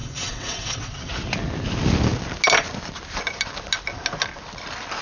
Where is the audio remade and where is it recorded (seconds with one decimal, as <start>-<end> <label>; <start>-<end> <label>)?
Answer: 0.0-1.1 remade; 1.1-5.0 recorded